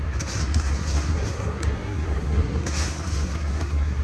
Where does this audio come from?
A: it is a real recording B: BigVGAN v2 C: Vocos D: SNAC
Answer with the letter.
D